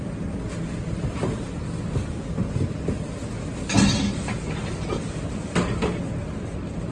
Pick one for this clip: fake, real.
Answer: real